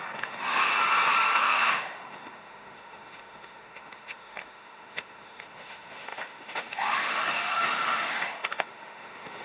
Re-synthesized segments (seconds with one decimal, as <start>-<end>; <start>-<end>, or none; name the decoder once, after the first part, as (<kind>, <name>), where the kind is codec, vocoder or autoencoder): 0.0-0.7 (autoencoder, DAC-VAE); 1.4-9.4